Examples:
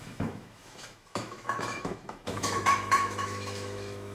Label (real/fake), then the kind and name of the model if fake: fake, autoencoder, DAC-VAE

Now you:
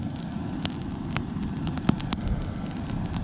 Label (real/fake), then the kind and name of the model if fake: real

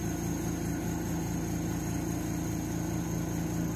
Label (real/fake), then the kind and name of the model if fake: real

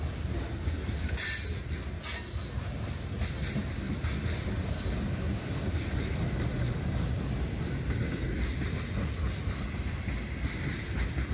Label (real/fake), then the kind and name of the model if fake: real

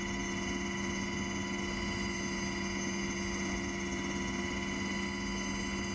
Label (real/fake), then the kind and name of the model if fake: real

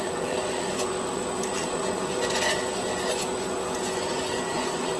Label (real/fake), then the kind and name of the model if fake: fake, vocoder, Vocos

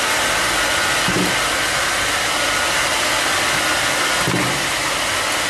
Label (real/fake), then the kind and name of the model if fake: real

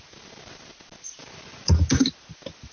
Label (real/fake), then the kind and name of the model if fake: real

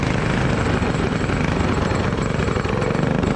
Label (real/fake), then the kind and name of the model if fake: real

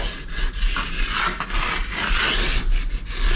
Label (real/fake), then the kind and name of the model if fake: real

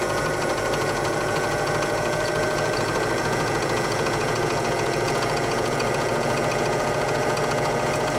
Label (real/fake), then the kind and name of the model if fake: fake, vocoder, Vocos